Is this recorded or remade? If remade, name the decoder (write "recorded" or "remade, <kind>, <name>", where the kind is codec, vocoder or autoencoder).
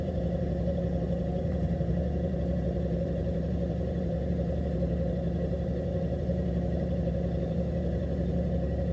remade, vocoder, BigVGAN v2